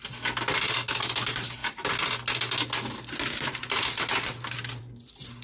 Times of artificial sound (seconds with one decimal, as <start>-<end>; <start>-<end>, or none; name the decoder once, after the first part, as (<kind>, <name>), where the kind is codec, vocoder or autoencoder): none